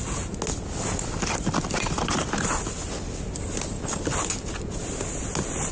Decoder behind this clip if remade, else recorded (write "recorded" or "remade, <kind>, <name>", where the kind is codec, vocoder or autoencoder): recorded